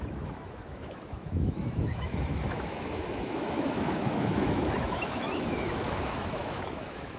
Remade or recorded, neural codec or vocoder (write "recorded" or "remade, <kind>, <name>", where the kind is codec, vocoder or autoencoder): remade, autoencoder, DAC-VAE